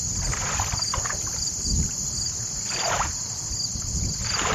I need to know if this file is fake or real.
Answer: real